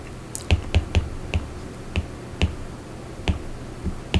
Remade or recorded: recorded